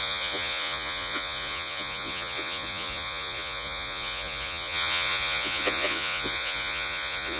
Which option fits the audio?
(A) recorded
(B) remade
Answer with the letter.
B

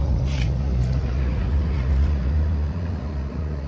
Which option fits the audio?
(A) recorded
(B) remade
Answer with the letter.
B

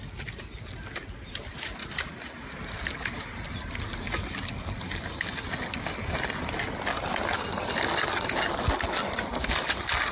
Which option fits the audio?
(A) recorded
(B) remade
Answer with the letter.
A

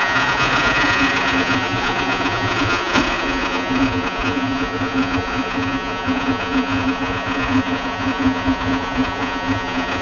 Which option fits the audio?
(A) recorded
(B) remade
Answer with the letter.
B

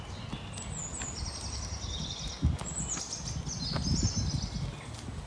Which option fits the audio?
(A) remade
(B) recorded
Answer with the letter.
B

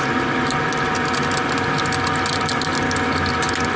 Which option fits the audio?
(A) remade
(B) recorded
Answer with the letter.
B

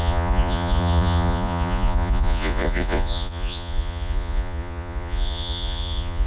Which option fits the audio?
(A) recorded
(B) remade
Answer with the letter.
B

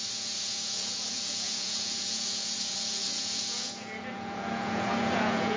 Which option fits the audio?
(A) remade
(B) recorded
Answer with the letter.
A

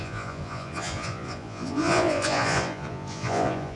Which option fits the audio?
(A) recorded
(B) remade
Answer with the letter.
B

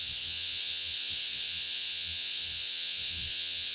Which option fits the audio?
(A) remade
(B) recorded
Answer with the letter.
A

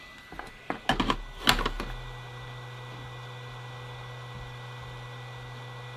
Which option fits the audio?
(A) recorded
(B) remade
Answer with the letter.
A